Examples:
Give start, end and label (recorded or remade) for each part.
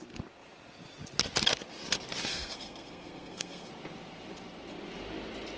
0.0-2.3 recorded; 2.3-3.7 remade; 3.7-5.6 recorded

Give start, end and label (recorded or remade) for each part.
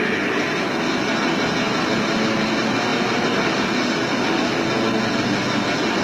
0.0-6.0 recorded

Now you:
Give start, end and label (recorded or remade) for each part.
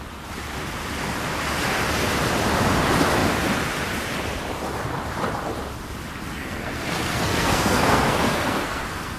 0.0-6.3 recorded; 6.3-9.2 remade